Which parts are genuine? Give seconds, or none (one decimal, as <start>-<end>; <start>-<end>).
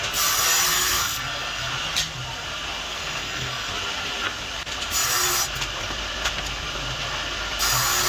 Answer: 0.0-0.9; 1.7-2.9; 3.7-8.1